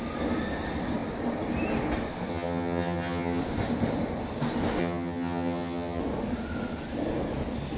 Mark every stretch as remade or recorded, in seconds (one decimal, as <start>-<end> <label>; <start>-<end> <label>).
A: 0.0-2.3 recorded; 2.3-3.4 remade; 3.4-4.8 recorded; 4.8-6.0 remade; 6.0-7.8 recorded

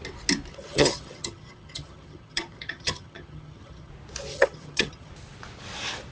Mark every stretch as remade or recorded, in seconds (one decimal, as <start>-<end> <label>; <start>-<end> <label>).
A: 0.0-0.5 recorded; 0.5-3.9 remade; 3.9-4.3 recorded; 4.3-5.1 remade; 5.1-6.1 recorded

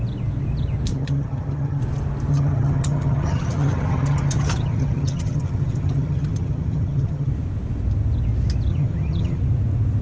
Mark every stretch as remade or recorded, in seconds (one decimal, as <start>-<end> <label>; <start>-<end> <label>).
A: 0.0-0.9 recorded; 0.9-1.8 remade; 1.8-2.3 recorded; 2.3-7.3 remade; 7.3-8.7 recorded; 8.7-9.4 remade; 9.4-10.0 recorded

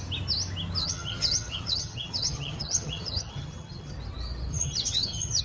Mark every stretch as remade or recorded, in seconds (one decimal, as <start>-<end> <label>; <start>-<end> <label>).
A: 0.0-0.8 recorded; 0.8-3.9 remade; 3.9-4.5 recorded; 4.5-5.4 remade

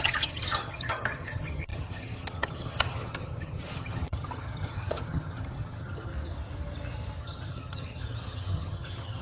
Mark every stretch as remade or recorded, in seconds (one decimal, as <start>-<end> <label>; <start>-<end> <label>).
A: 0.0-6.1 remade; 6.1-7.2 recorded; 7.2-9.2 remade